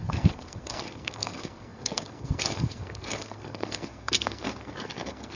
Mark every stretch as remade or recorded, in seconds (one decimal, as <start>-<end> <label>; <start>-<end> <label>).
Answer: 0.0-5.3 remade